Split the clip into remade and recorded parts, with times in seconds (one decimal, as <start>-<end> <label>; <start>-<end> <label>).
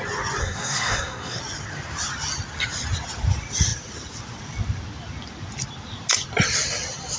0.0-0.4 recorded; 0.4-1.4 remade; 1.4-7.2 recorded